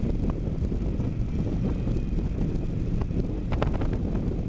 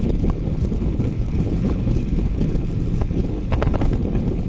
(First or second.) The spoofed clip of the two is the second